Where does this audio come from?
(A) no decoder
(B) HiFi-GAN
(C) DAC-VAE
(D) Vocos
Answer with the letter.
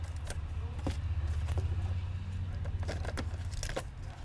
A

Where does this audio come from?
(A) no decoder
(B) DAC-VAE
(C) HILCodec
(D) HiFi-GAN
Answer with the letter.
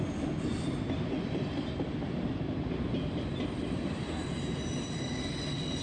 A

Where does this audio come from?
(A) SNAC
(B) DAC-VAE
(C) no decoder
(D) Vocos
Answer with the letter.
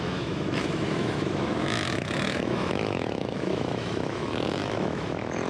B